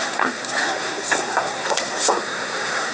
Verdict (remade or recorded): remade